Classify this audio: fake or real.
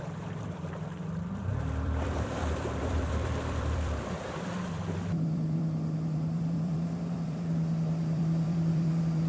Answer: fake